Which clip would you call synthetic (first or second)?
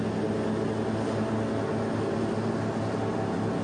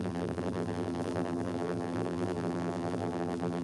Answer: second